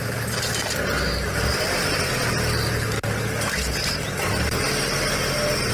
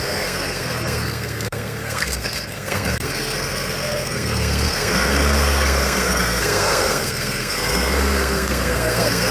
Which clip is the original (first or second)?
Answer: first